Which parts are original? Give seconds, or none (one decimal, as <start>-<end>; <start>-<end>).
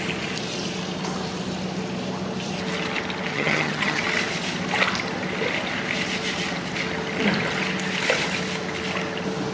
0.0-3.3; 4.0-9.5